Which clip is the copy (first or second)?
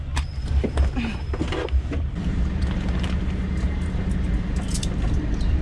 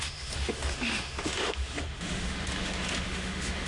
second